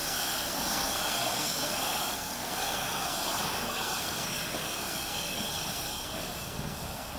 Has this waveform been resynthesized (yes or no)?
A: yes